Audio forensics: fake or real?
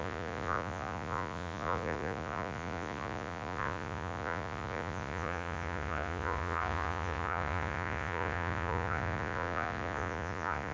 fake